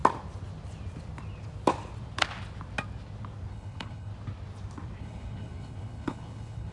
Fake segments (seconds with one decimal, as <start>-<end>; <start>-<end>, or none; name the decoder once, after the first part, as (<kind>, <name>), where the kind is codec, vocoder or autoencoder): 3.5-4.1 (codec, HILCodec); 5.0-6.7